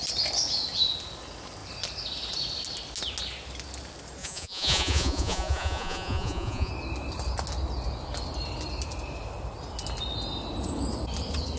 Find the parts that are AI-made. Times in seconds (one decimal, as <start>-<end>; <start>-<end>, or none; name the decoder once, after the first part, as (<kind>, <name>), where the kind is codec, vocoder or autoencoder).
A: 4.2-6.7 (vocoder, Vocos)